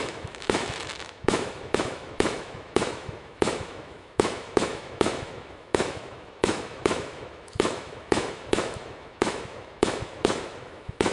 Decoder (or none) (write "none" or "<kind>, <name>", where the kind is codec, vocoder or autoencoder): autoencoder, DAC-VAE